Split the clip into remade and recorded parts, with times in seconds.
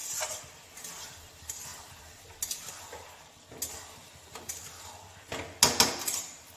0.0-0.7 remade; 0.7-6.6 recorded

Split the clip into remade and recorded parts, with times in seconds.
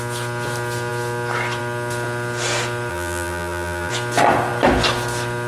0.0-2.9 recorded; 2.9-3.9 remade; 3.9-5.5 recorded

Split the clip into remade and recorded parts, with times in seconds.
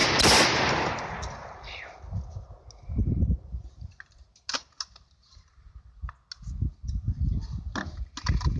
0.0-3.0 recorded; 3.0-5.8 remade; 5.8-8.6 recorded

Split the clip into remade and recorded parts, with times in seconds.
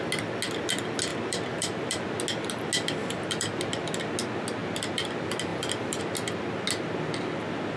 0.0-1.1 recorded; 1.1-2.2 remade; 2.2-3.0 recorded; 3.0-3.7 remade; 3.7-4.6 recorded; 4.6-5.1 remade; 5.1-5.5 recorded; 5.5-6.0 remade; 6.0-7.8 recorded